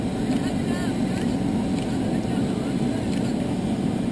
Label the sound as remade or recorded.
recorded